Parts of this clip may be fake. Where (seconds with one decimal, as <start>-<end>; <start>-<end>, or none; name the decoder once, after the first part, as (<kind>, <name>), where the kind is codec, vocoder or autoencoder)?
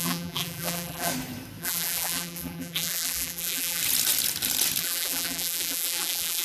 0.0-1.1 (vocoder, BigVGAN v2); 1.6-3.8; 4.8-6.4